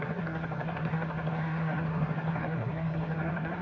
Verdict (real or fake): fake